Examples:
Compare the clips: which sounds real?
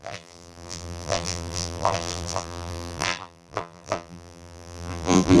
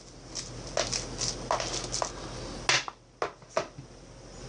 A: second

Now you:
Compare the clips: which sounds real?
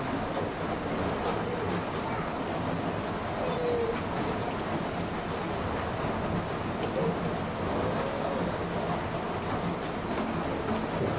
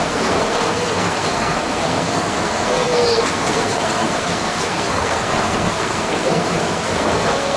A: first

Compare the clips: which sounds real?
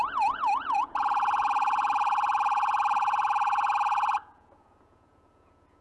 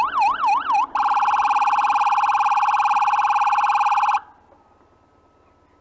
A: second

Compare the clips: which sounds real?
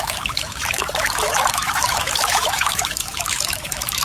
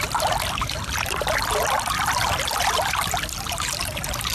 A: second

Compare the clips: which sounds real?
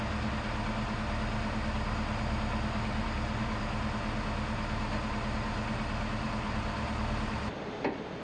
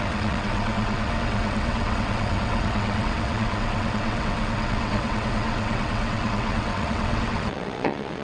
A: first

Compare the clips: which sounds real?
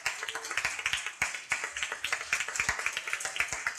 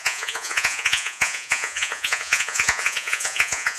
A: first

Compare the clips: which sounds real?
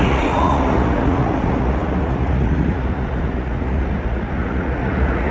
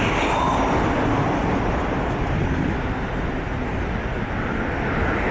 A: second